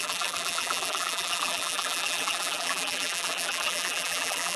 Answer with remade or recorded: remade